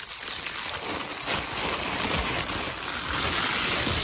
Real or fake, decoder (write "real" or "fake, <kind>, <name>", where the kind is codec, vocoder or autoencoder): real